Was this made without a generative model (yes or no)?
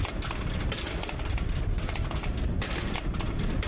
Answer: yes